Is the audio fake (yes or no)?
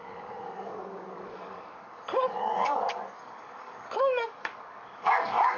yes